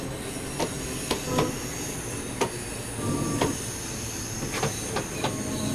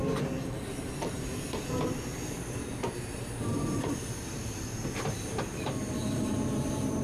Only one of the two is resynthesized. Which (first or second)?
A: second